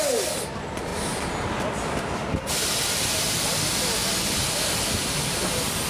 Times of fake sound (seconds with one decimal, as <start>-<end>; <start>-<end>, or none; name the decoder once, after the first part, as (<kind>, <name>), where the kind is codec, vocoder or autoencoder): 0.0-0.9 (vocoder, BigVGAN v2); 1.7-4.0; 5.1-5.9